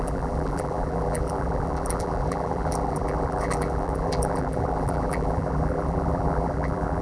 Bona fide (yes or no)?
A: no